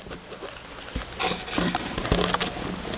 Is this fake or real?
real